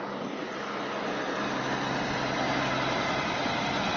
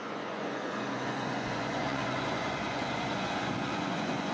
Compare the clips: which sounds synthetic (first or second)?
second